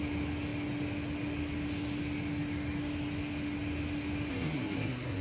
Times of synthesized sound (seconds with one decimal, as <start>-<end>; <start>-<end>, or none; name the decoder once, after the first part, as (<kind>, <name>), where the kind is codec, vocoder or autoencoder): 4.3-5.2 (codec, SNAC)

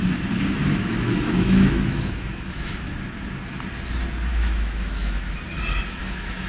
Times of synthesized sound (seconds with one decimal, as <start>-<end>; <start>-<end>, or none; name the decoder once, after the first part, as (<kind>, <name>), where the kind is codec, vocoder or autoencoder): 0.6-2.7 (autoencoder, DAC-VAE); 4.3-5.4; 6.0-6.5

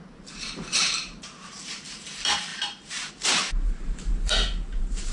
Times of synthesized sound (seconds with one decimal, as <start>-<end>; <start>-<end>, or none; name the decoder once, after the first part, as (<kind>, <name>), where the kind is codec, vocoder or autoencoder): 0.0-5.1 (vocoder, BigVGAN v2)

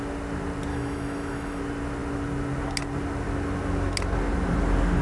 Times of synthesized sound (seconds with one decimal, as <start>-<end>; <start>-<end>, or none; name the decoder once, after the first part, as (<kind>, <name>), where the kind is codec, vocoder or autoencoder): 0.7-1.6 (autoencoder, DAC-VAE)

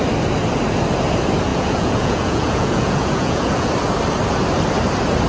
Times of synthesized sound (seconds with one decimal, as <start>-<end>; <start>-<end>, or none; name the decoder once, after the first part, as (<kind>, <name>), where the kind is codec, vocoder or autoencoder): 1.5-3.7 (vocoder, Vocos)

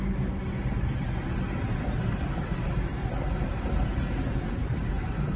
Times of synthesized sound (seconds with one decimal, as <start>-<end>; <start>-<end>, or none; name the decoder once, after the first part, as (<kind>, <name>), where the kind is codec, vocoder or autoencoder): 1.7-4.9 (vocoder, BigVGAN v2)